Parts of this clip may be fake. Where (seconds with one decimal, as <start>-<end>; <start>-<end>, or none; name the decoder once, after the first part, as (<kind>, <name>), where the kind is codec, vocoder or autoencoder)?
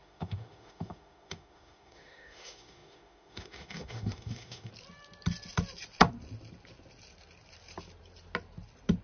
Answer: 0.0-4.7 (autoencoder, DAC-VAE)